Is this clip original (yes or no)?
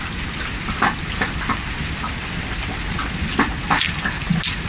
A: yes